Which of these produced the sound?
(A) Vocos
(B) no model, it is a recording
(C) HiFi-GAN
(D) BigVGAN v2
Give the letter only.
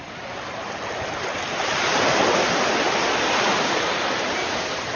B